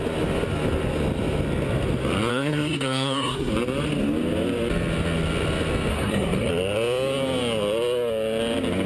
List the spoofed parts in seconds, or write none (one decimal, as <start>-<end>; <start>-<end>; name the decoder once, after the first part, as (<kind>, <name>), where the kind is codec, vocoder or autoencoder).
2.3-3.5 (codec, SNAC); 5.9-6.5